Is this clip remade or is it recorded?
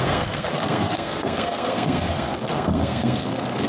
remade